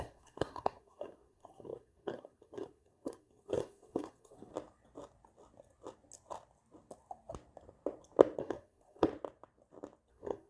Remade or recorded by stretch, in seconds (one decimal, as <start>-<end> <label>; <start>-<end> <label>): 0.0-4.5 remade; 4.5-8.4 recorded; 8.4-9.1 remade; 9.1-10.1 recorded; 10.1-10.5 remade